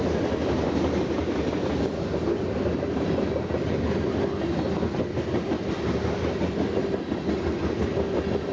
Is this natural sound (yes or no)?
yes